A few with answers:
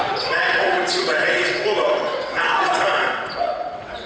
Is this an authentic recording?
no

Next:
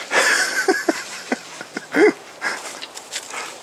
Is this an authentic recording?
no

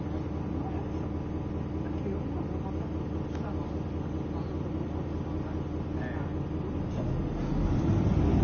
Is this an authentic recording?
yes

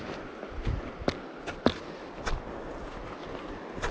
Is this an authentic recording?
yes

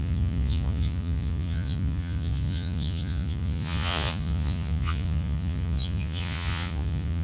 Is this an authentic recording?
no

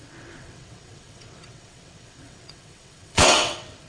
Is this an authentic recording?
no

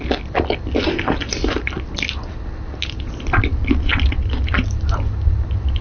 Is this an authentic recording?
yes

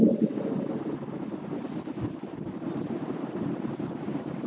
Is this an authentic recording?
yes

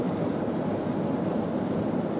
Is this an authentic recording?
yes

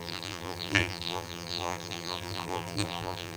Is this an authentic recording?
no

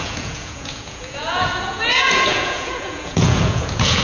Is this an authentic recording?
no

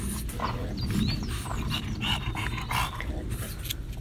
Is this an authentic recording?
yes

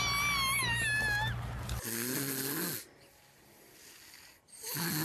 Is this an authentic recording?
yes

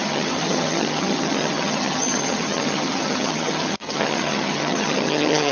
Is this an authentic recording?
no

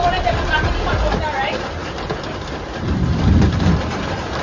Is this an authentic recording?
no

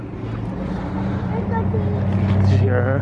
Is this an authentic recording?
yes